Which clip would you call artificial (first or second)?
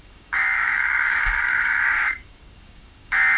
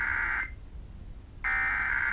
first